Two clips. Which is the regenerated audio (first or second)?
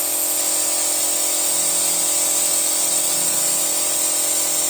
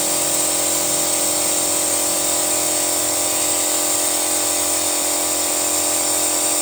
second